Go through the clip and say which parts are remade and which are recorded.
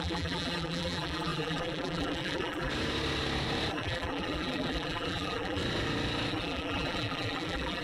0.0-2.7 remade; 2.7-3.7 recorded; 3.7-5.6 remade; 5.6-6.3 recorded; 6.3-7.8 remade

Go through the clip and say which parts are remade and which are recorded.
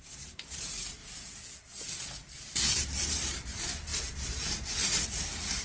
0.0-1.0 remade; 1.0-2.6 recorded; 2.6-5.6 remade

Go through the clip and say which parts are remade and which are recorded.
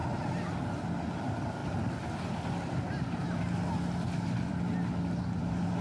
0.0-5.8 recorded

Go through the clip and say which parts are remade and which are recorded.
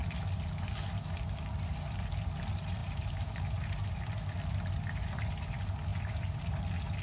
0.0-2.8 recorded; 2.8-4.2 remade; 4.2-5.9 recorded; 5.9-6.5 remade; 6.5-7.0 recorded